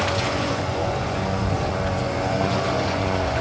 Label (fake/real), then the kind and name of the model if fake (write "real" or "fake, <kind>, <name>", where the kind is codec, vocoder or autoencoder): fake, vocoder, Vocos